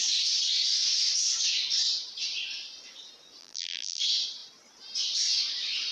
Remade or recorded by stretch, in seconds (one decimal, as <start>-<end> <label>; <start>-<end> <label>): 0.0-3.4 recorded; 3.4-4.0 remade; 4.0-5.9 recorded